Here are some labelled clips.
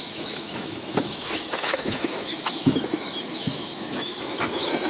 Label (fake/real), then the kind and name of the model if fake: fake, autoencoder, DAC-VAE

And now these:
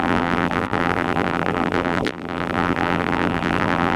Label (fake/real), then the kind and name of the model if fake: fake, vocoder, BigVGAN v2